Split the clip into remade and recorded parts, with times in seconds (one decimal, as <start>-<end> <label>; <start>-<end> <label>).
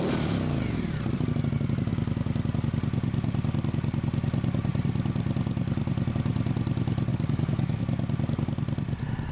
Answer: 0.0-7.1 recorded; 7.1-7.8 remade; 7.8-9.3 recorded